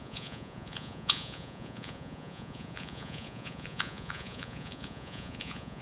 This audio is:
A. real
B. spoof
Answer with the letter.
B